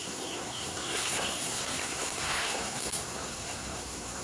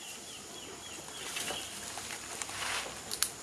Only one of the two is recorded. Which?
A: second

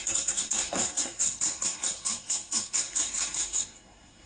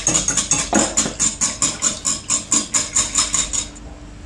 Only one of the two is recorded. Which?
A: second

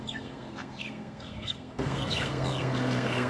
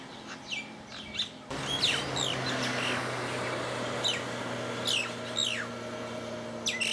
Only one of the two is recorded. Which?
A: second